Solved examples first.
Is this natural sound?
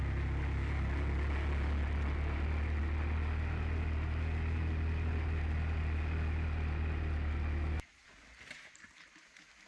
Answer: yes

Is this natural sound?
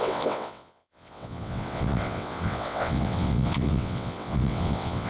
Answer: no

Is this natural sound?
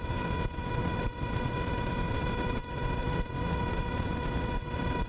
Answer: no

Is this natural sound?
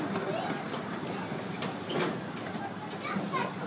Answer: yes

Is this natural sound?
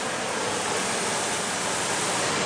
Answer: yes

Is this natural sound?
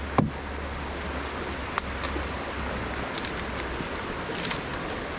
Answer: yes